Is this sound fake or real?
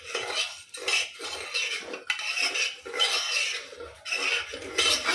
real